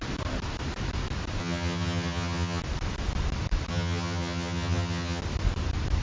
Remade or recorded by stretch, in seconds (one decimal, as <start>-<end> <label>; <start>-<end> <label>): 0.0-1.4 recorded; 1.4-2.6 remade; 2.6-3.7 recorded; 3.7-5.2 remade; 5.2-6.0 recorded